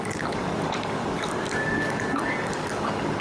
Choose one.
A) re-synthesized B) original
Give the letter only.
A